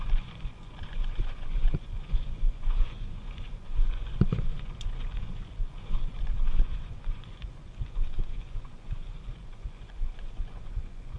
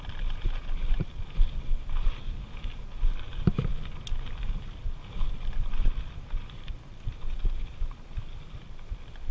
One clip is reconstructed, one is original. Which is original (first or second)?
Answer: second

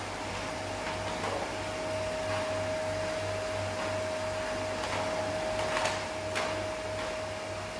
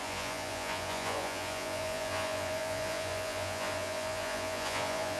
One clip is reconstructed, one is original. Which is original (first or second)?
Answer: first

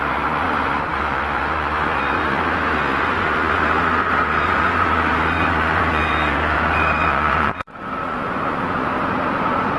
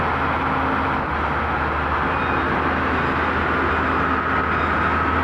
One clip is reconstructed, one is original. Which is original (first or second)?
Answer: second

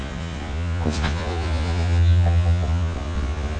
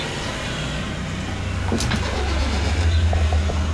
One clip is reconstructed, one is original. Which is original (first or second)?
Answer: second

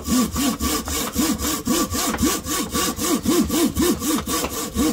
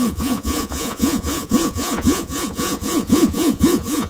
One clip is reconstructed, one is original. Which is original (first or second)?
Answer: first